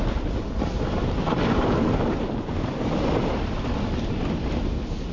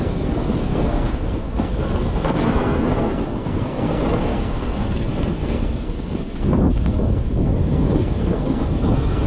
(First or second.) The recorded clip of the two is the first